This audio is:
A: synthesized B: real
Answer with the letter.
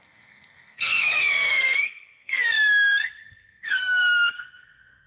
A